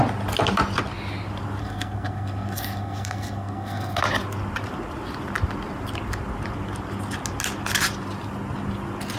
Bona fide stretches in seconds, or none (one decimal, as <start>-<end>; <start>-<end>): 0.0-1.6; 4.0-9.2